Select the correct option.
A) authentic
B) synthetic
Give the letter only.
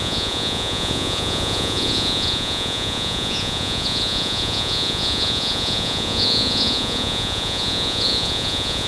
B